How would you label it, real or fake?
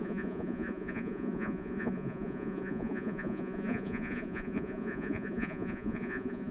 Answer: fake